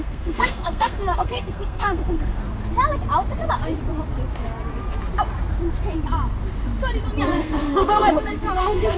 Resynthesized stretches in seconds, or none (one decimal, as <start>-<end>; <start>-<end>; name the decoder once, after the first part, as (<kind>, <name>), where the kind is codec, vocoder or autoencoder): 0.0-2.4 (codec, SNAC); 7.3-9.0